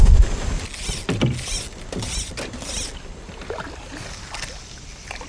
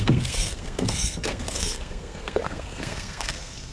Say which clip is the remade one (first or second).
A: second